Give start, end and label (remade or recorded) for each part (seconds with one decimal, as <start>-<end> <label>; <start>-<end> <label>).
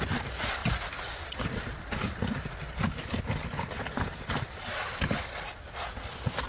0.0-6.5 recorded